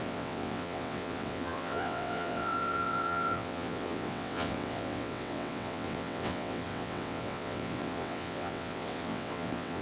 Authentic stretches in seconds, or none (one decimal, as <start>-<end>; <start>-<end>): none